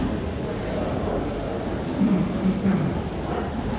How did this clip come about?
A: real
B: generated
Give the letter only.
A